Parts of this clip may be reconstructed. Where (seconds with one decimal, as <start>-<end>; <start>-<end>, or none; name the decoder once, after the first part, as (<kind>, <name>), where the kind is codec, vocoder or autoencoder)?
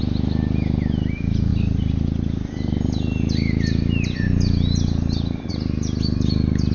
none